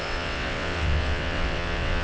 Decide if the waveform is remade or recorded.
remade